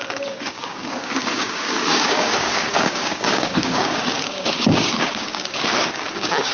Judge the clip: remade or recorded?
remade